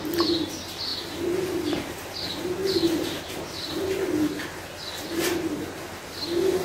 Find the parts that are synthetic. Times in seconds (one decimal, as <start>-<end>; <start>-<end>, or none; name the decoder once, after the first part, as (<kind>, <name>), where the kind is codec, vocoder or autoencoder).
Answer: none

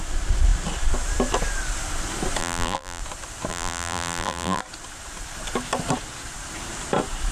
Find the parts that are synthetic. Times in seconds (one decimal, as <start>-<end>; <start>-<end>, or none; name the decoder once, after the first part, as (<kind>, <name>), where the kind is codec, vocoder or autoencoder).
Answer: 2.4-3.0 (vocoder, BigVGAN v2); 3.5-4.6

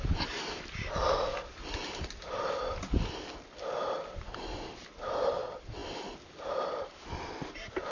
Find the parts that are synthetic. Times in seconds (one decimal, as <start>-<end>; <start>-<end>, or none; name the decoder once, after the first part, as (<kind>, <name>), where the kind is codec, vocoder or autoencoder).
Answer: none

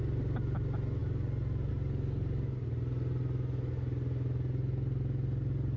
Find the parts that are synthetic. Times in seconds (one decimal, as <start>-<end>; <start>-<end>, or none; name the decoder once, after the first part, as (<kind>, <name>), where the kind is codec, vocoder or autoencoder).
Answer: none

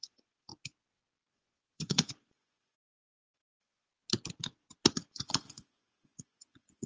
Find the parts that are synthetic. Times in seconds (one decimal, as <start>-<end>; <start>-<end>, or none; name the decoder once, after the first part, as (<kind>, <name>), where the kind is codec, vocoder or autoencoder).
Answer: 0.0-0.5 (vocoder, Vocos); 1.3-3.9; 4.9-6.9

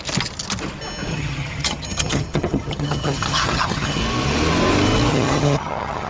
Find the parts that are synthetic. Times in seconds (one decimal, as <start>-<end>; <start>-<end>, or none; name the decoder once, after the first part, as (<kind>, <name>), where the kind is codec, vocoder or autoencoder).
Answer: 1.1-4.0 (vocoder, HiFi-GAN); 5.1-6.1

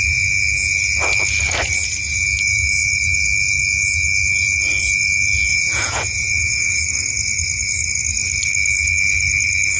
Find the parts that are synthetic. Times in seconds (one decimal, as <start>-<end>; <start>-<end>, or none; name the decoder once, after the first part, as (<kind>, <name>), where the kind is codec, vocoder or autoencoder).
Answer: 5.5-6.8 (vocoder, Vocos)

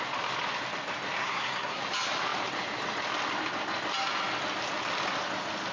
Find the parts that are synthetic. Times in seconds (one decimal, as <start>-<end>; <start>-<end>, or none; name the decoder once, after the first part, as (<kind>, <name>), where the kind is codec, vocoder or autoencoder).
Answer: 1.2-1.8 (codec, SNAC)